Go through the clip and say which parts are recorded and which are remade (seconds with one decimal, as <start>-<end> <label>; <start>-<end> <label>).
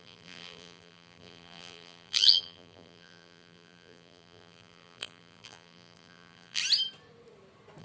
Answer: 0.0-6.6 remade; 6.6-7.8 recorded